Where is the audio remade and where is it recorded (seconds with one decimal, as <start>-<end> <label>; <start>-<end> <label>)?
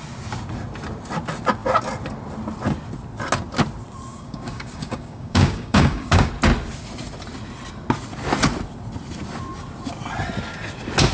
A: 0.0-4.1 recorded; 4.1-6.3 remade; 6.3-11.1 recorded